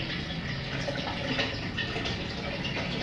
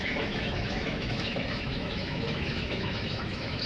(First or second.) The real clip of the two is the first